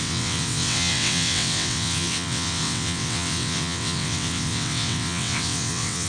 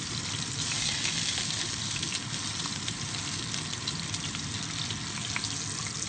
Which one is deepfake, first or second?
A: first